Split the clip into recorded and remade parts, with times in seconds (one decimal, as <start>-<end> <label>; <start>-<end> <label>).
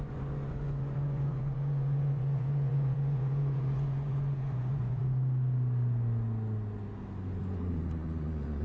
0.0-5.0 remade; 5.0-7.4 recorded; 7.4-8.6 remade